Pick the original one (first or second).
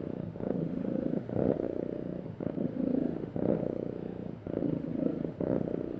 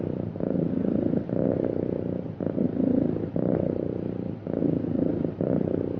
second